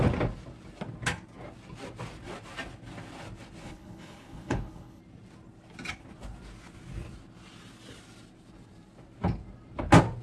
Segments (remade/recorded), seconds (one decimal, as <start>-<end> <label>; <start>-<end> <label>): 0.0-3.6 recorded; 3.6-5.0 remade; 5.0-10.2 recorded